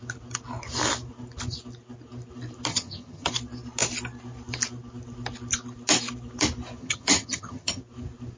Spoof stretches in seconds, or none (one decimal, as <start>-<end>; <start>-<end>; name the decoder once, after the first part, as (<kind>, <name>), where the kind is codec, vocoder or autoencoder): 2.7-3.3 (vocoder, HiFi-GAN); 6.8-7.8